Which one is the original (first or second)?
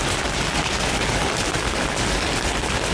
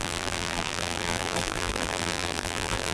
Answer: first